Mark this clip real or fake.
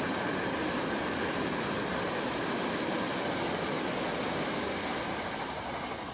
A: real